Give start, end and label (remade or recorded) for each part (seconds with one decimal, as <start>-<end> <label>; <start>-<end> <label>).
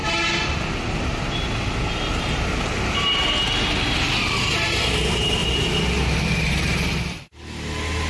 0.0-8.1 recorded